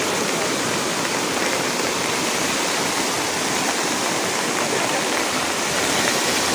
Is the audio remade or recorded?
recorded